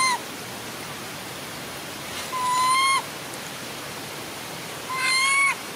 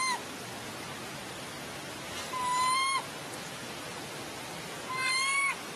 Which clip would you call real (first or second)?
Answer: second